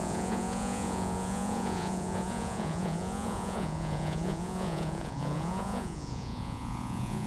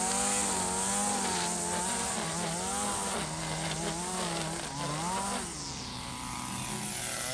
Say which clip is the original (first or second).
second